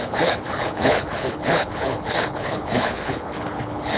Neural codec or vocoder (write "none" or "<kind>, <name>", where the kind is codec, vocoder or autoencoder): codec, HILCodec